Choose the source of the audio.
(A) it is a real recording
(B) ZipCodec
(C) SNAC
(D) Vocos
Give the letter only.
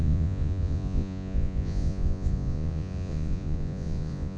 D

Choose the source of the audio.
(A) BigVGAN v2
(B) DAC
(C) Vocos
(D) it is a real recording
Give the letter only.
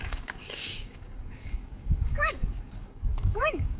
B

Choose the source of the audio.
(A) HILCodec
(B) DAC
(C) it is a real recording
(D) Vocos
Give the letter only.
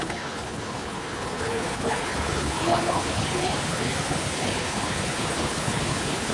A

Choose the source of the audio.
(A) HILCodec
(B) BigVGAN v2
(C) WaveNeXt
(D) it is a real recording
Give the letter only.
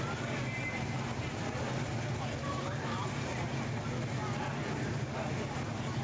D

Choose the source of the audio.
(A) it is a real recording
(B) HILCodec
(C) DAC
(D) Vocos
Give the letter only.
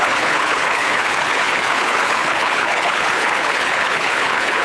B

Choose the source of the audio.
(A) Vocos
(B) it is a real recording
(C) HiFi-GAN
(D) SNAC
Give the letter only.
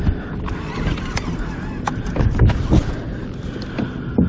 B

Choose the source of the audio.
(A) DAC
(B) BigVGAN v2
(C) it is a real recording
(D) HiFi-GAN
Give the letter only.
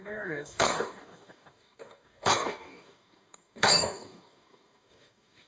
A